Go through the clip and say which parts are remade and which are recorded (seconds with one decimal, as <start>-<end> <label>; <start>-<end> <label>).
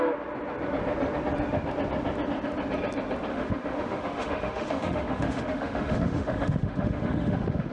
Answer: 0.0-3.3 recorded; 3.3-7.7 remade